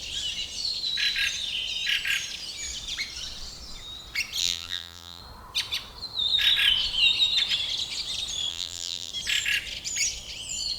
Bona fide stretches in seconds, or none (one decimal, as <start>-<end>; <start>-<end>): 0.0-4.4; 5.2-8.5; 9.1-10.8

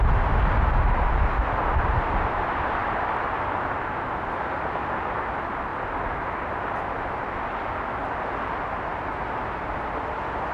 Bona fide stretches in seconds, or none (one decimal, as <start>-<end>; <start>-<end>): 0.0-10.5

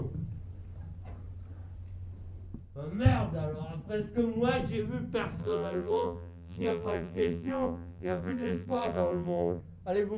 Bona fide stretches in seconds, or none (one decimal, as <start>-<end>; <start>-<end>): 0.0-5.4; 9.6-10.2

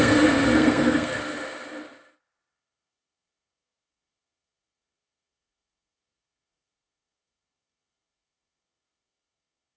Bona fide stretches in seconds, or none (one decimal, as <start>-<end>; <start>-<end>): 1.1-2.5

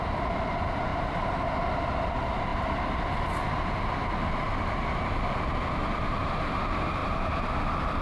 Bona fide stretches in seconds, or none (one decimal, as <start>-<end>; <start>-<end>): 0.0-0.9; 1.6-7.0; 7.5-8.0

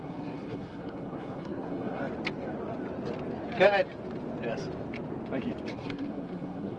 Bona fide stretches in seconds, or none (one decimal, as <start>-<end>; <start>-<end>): 2.0-5.7